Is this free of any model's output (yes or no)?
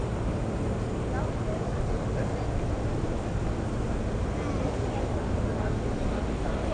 yes